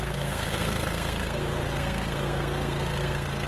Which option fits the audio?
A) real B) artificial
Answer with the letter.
B